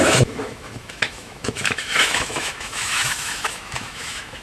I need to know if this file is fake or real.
fake